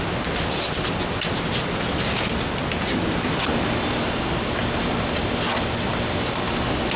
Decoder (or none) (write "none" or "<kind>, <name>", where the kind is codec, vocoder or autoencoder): none